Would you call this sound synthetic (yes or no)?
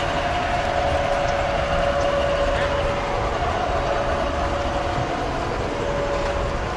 no